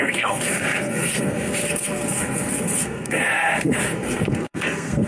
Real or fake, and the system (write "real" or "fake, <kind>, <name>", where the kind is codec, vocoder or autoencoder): fake, codec, SNAC